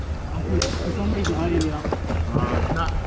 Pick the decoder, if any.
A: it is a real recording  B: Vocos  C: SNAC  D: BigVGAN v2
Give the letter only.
A